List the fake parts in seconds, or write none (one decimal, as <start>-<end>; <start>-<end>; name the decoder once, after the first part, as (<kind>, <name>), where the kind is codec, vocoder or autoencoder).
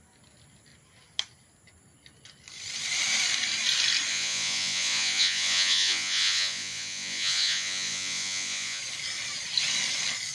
4.1-8.8 (vocoder, Vocos)